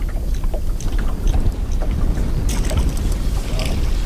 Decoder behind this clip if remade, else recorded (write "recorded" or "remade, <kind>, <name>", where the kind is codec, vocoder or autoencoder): remade, vocoder, BigVGAN v2